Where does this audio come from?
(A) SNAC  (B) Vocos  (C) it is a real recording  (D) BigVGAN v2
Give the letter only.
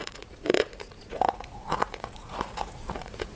B